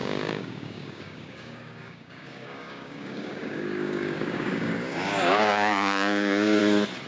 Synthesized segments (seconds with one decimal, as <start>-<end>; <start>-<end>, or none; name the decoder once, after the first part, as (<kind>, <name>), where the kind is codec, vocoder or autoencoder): 0.0-6.6 (codec, DAC)